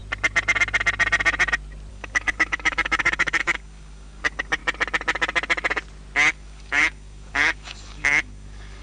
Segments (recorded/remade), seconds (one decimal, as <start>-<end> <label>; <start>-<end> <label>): 0.0-1.9 recorded; 1.9-4.6 remade; 4.6-6.3 recorded; 6.3-8.8 remade